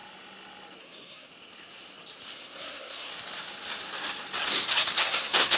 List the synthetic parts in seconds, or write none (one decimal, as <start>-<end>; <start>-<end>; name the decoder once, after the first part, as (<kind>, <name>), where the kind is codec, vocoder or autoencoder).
0.8-1.3 (codec, SNAC); 2.3-3.1; 5.0-5.6